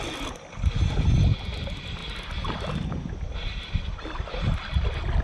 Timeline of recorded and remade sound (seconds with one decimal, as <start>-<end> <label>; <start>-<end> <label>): 0.0-5.2 recorded